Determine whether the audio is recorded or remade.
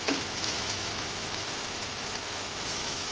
remade